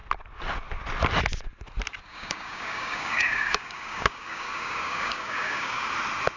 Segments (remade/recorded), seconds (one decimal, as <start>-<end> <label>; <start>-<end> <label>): 0.0-2.1 recorded; 2.1-5.9 remade; 5.9-6.4 recorded